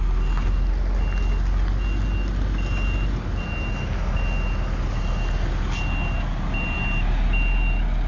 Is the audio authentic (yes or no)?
yes